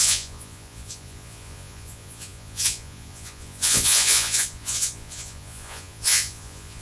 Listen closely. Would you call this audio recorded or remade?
remade